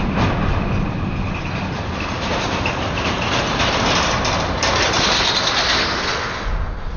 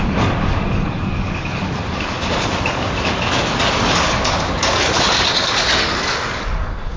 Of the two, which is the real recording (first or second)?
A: first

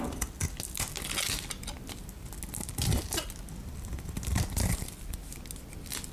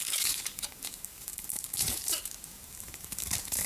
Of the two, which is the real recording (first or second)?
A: first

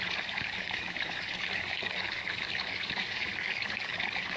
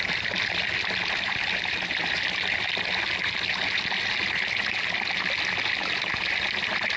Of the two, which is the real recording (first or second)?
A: second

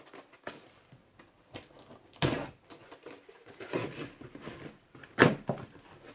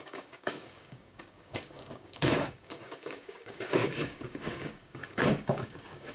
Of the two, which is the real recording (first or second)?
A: first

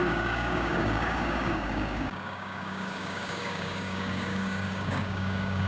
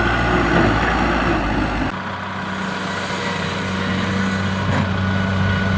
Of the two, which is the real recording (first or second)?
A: second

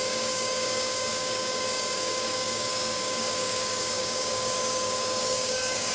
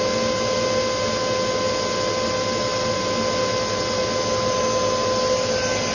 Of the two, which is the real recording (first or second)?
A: second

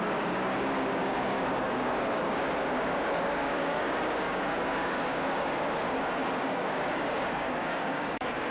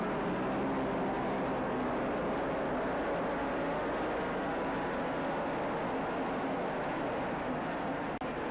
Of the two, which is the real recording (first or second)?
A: second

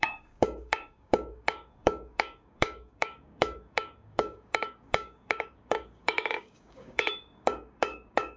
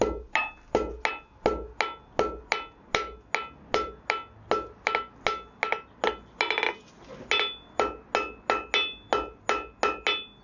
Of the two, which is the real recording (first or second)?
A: second